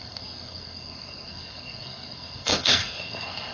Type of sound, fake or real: fake